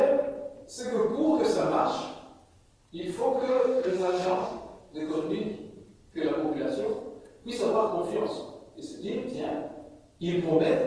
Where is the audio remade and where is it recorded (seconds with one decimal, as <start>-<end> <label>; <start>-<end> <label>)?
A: 0.0-3.5 recorded; 3.5-4.8 remade; 4.8-10.9 recorded